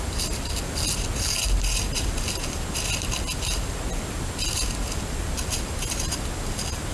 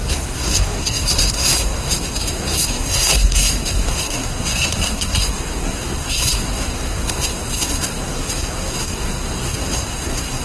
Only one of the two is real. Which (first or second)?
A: first